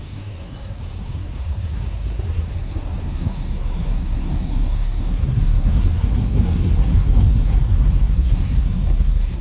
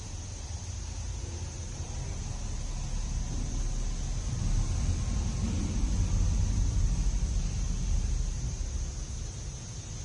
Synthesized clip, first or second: first